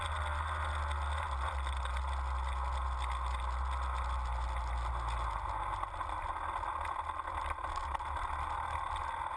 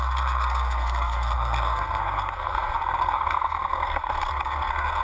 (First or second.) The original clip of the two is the first